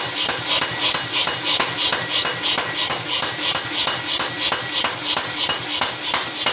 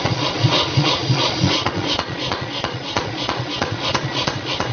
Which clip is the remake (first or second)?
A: second